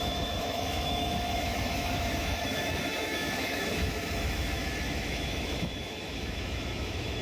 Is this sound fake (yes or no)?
yes